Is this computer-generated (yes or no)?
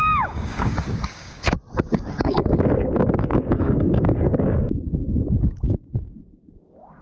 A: yes